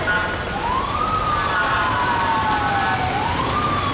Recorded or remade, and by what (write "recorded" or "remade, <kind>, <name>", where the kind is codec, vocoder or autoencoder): recorded